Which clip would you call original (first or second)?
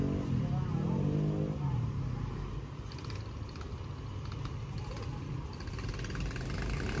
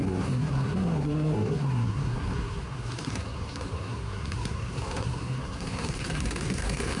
first